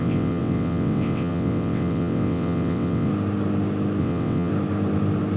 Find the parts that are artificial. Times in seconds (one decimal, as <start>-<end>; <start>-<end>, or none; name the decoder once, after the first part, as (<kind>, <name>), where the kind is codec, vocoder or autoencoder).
0.0-3.1 (vocoder, WaveNeXt); 4.0-4.5